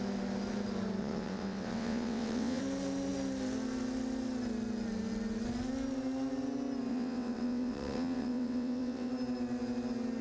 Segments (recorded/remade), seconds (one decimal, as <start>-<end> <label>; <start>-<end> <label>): 0.0-1.0 recorded; 1.0-2.6 remade; 2.6-6.9 recorded; 6.9-9.1 remade; 9.1-10.2 recorded

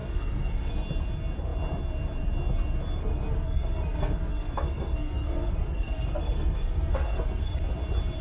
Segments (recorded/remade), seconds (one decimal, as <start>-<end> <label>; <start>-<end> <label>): 0.0-0.7 remade; 0.7-3.0 recorded; 3.0-7.6 remade; 7.6-8.2 recorded

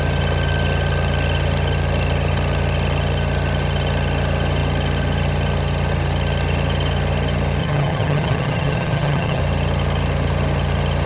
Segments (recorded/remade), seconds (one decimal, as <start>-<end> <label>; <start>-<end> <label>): 0.0-7.6 recorded; 7.6-9.4 remade; 9.4-11.1 recorded

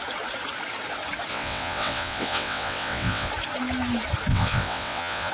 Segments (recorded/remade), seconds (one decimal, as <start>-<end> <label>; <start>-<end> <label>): 0.0-1.3 recorded; 1.3-3.3 remade; 3.3-4.3 recorded; 4.3-5.3 remade

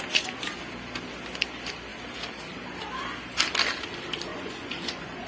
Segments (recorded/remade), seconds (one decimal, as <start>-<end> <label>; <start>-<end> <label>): 0.0-4.3 recorded; 4.3-5.3 remade